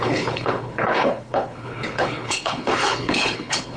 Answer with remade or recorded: remade